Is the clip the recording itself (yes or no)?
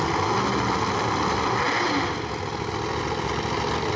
yes